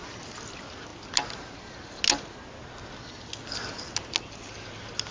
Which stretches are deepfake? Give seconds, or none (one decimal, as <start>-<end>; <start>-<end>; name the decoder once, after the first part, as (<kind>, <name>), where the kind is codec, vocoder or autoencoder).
none